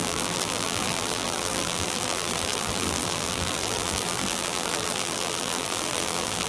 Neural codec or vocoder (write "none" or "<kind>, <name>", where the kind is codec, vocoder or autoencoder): vocoder, BigVGAN v2